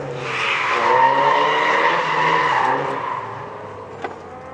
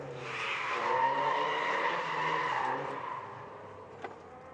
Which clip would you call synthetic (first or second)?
second